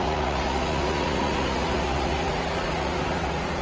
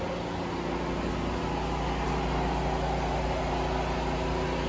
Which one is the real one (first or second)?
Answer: second